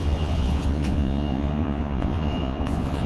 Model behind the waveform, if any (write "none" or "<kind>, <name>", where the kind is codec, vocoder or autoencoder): vocoder, Vocos